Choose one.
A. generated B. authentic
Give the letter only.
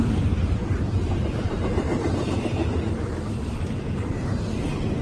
A